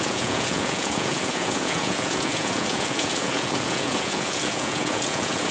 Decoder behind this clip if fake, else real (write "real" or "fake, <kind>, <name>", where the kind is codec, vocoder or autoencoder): fake, vocoder, Vocos